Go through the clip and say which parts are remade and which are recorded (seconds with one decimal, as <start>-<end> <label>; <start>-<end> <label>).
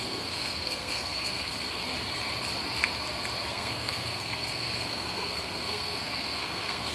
0.0-1.8 remade; 1.8-3.5 recorded; 3.5-6.9 remade